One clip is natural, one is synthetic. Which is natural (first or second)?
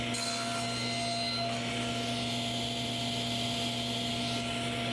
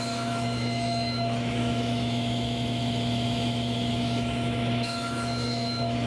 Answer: first